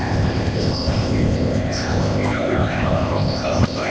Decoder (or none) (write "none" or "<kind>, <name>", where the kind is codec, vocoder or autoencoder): codec, ZipCodec